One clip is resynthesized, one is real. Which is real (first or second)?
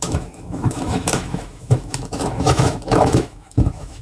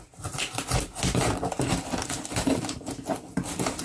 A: second